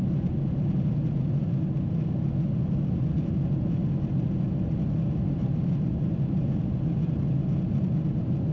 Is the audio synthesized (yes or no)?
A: no